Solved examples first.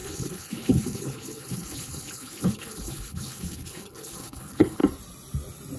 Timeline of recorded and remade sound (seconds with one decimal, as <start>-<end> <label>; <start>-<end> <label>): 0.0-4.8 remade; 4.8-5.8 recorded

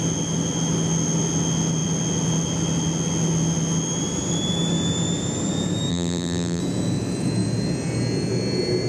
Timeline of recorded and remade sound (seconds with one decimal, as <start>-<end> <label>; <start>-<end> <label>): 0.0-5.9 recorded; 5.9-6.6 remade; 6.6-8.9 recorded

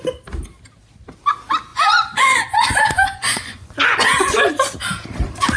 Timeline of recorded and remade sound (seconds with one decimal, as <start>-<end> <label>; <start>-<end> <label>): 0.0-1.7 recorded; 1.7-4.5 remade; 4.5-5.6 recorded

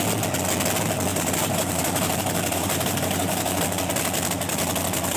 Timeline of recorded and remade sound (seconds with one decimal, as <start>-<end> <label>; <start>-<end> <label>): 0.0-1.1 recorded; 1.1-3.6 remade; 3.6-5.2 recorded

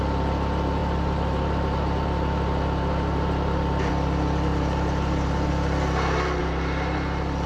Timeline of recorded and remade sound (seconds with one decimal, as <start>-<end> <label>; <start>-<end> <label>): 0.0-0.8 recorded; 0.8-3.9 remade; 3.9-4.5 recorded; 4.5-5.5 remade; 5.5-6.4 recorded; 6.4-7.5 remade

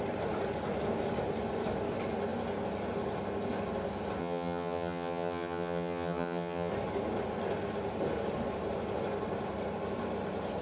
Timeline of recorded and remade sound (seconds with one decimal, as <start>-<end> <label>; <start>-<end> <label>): 0.0-4.2 recorded; 4.2-6.7 remade; 6.7-10.6 recorded

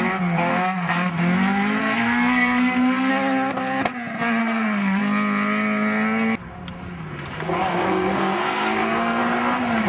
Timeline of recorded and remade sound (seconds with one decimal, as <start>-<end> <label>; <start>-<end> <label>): 0.0-0.5 recorded; 0.5-1.1 remade; 1.1-1.8 recorded; 1.8-3.1 remade; 3.1-4.4 recorded; 4.4-5.0 remade; 5.0-7.7 recorded; 7.7-9.2 remade; 9.2-9.9 recorded

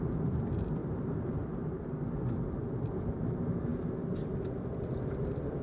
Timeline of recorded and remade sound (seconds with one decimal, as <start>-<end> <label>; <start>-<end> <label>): 0.0-0.8 recorded; 0.8-1.9 remade; 1.9-5.6 recorded